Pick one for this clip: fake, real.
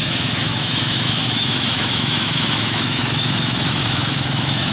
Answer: fake